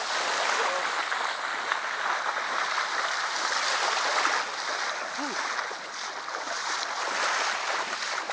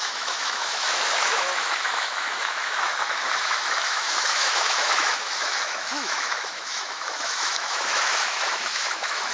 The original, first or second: first